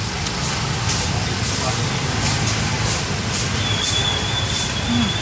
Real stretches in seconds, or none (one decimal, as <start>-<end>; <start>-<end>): 0.0-5.2